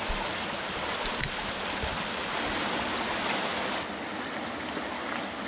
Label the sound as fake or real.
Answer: real